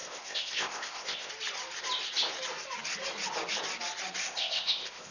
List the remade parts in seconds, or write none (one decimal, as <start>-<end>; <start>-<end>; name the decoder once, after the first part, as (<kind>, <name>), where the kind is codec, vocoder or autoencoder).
0.0-1.3 (codec, ZipCodec); 4.2-5.1

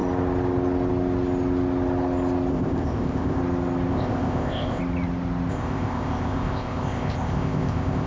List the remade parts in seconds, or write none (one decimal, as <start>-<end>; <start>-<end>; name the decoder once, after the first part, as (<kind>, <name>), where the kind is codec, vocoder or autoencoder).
2.5-3.4 (codec, ZipCodec); 3.9-4.8; 5.5-8.1

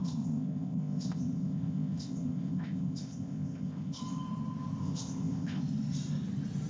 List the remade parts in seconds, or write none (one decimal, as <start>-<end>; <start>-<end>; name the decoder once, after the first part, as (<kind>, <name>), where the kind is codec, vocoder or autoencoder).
0.0-4.0 (codec, ZipCodec); 4.8-5.6

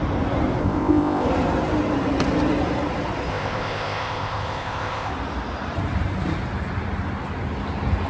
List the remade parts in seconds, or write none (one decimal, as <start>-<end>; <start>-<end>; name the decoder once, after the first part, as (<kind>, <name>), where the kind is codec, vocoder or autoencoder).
0.6-1.3 (codec, ZipCodec); 3.3-5.1

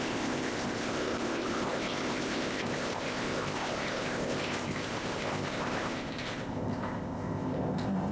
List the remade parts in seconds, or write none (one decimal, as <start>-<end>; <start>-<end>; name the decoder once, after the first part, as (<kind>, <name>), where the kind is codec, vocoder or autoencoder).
0.0-8.1 (codec, ZipCodec)

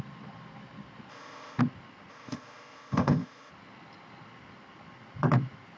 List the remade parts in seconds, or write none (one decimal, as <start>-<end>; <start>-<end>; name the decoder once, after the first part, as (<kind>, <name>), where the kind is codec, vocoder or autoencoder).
1.1-1.6 (codec, ZipCodec); 2.1-3.5